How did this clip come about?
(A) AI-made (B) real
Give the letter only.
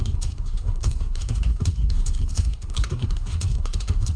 A